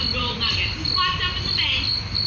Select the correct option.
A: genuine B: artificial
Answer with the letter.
A